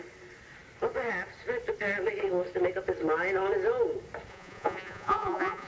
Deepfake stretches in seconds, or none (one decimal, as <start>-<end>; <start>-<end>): 4.3-5.7

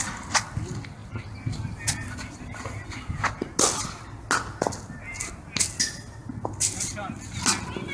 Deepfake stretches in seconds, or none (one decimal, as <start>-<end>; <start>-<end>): none

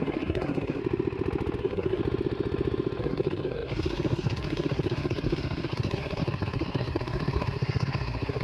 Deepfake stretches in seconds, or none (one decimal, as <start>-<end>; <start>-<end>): 0.0-0.8; 1.6-2.0; 3.0-8.4

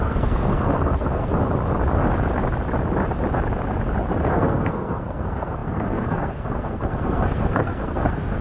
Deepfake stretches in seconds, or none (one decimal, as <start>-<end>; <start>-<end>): 0.0-1.3; 4.3-8.4

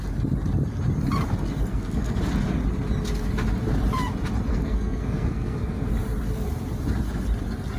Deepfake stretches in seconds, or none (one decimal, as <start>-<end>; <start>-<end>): 1.7-2.2; 4.5-5.9

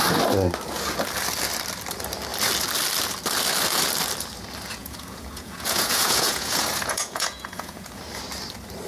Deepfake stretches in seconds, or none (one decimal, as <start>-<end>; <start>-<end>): 4.8-8.0

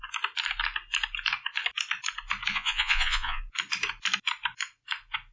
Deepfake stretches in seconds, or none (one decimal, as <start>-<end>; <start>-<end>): 2.5-3.4